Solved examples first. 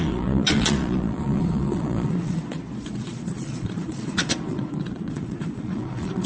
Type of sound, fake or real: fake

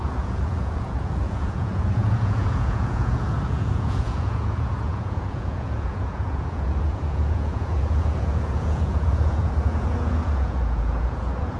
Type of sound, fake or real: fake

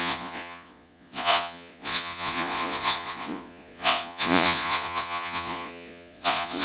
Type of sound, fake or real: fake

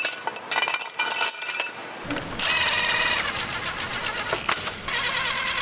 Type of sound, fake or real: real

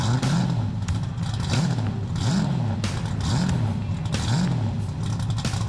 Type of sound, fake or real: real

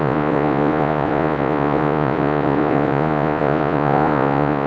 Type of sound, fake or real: fake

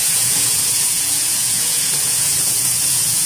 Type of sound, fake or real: fake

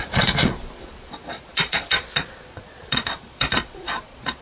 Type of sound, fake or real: fake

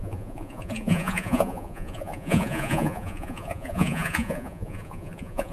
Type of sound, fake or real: fake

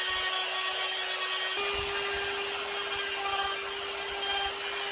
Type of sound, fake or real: real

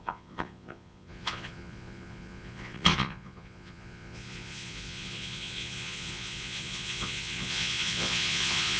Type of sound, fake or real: fake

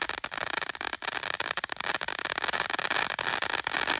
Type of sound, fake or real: real